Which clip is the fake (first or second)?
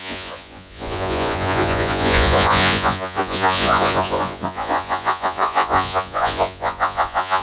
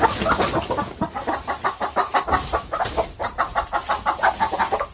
first